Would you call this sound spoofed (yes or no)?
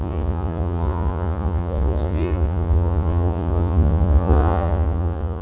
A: yes